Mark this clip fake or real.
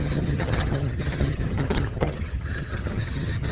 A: fake